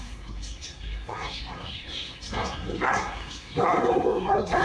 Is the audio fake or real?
fake